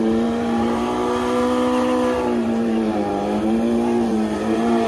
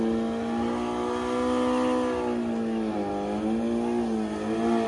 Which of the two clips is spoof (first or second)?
first